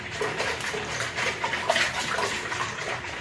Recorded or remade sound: recorded